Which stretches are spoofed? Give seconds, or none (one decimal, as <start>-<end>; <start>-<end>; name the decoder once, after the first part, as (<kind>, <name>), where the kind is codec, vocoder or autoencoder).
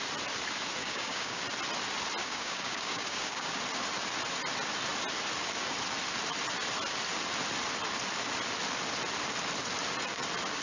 0.8-1.4 (codec, DAC); 2.2-3.6